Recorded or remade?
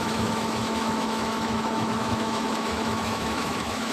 remade